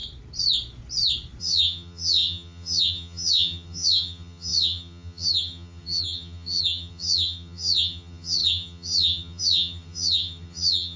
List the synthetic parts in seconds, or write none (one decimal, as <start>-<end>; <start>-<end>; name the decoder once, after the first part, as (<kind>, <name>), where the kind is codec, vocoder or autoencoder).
1.4-11.0 (vocoder, HiFi-GAN)